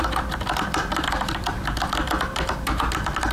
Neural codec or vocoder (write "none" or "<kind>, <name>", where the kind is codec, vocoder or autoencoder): none